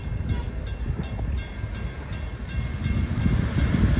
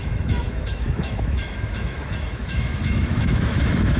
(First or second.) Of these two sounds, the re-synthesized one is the second